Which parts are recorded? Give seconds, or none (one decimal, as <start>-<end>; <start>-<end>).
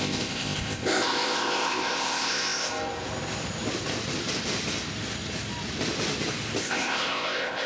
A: 2.7-6.6